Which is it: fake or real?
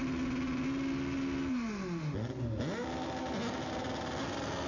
real